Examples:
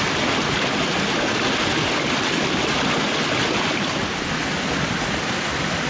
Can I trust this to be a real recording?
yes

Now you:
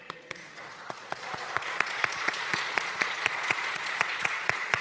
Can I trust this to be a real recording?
no